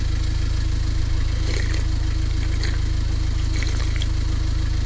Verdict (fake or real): real